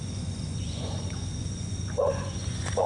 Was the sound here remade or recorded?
remade